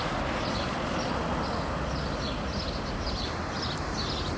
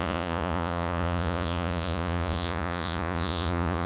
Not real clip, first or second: second